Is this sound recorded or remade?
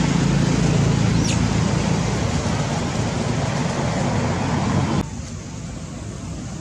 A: recorded